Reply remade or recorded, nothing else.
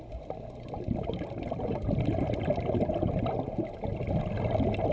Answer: recorded